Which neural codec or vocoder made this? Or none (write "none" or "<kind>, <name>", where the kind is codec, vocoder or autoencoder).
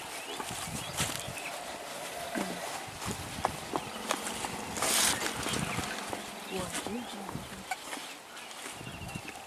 none